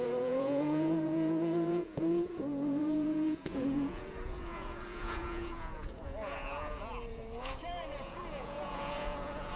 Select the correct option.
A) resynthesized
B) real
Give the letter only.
A